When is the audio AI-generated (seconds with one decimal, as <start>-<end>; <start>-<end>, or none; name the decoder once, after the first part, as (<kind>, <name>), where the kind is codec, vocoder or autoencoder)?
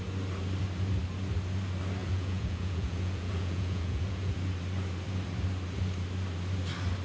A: 2.0-4.3 (vocoder, Vocos)